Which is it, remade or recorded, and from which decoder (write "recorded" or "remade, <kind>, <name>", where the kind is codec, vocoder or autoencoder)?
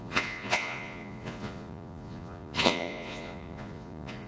remade, vocoder, Vocos